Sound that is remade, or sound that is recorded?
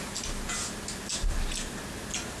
recorded